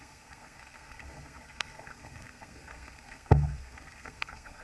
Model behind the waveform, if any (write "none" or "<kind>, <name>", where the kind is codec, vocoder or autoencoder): codec, SNAC